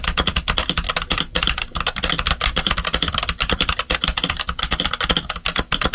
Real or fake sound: fake